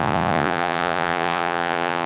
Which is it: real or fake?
fake